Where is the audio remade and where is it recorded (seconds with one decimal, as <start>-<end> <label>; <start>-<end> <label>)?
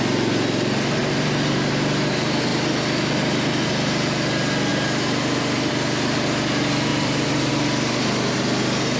0.0-1.0 recorded; 1.0-1.7 remade; 1.7-6.9 recorded; 6.9-7.5 remade; 7.5-9.0 recorded